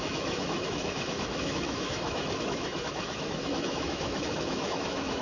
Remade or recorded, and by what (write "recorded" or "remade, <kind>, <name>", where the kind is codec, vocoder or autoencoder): remade, autoencoder, DAC-VAE